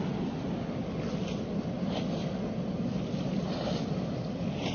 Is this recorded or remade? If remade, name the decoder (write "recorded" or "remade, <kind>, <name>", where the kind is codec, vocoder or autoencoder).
recorded